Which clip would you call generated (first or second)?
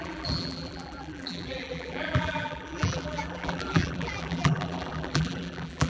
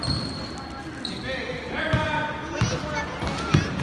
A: first